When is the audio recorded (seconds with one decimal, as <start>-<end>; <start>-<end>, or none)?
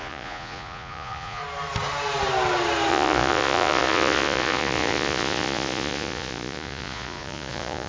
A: 1.4-2.9